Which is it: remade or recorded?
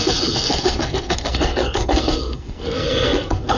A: remade